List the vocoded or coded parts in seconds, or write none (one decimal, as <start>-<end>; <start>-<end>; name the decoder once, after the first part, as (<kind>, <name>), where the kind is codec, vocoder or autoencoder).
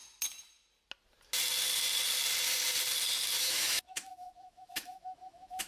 3.4-5.7 (autoencoder, DAC-VAE)